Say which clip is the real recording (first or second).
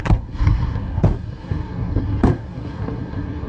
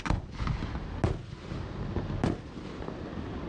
second